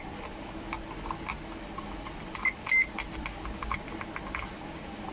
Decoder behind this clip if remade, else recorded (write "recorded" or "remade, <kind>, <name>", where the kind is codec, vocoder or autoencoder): recorded